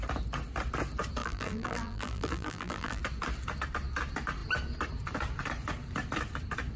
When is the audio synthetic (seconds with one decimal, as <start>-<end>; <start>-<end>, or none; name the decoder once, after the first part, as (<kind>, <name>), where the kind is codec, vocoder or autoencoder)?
1.2-3.0 (vocoder, BigVGAN v2)